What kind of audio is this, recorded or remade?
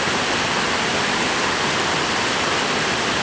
recorded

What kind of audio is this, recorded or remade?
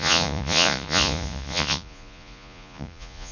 remade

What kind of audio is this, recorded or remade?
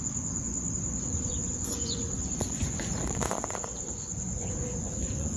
remade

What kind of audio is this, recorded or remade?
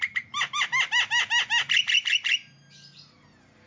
recorded